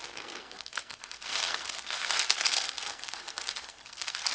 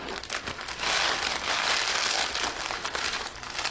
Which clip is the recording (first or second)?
second